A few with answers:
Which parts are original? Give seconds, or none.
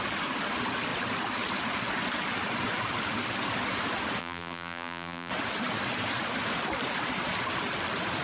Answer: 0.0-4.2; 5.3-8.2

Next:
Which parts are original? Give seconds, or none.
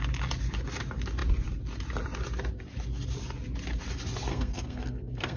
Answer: 0.0-4.3